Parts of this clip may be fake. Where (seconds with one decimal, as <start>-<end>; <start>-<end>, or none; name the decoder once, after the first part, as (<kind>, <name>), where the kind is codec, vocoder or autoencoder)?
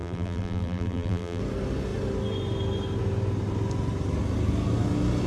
0.0-1.4 (vocoder, BigVGAN v2)